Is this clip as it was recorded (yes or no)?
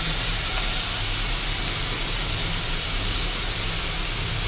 yes